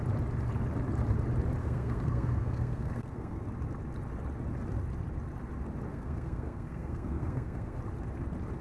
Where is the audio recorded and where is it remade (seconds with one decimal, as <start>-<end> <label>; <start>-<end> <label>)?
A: 0.0-1.6 recorded; 1.6-3.4 remade; 3.4-5.9 recorded; 5.9-7.8 remade; 7.8-8.6 recorded